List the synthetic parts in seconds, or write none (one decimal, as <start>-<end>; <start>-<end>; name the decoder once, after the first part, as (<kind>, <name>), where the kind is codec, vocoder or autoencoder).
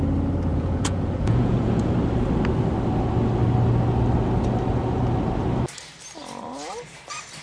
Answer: 0.5-1.9 (vocoder, Vocos)